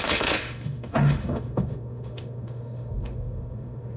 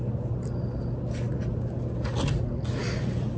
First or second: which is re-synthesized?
first